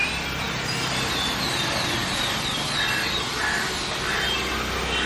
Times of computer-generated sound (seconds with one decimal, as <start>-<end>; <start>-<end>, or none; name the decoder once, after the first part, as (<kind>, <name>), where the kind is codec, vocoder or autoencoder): none